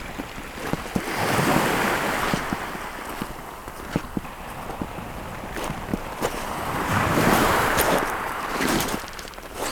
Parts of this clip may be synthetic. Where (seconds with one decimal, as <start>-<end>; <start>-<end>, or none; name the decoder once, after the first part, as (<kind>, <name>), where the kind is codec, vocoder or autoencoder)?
5.9-9.7 (vocoder, BigVGAN v2)